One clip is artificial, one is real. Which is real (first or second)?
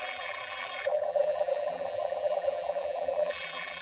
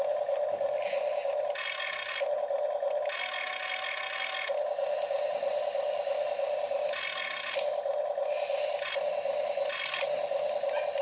second